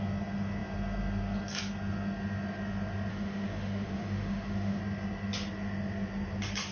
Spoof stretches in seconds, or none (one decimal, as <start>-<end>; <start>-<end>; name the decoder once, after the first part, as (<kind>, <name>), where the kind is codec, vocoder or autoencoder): 3.1-4.8 (autoencoder, DAC-VAE)